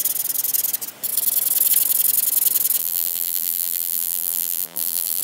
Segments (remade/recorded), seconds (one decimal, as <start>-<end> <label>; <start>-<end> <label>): 0.0-2.8 recorded; 2.8-5.2 remade